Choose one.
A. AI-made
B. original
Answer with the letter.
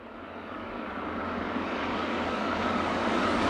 A